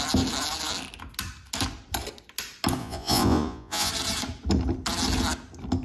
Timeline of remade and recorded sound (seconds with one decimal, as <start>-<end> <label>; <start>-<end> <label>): 0.0-2.8 recorded; 2.8-3.9 remade; 3.9-5.8 recorded